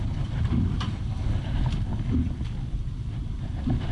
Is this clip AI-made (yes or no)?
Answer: yes